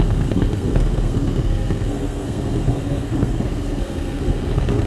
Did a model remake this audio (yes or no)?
yes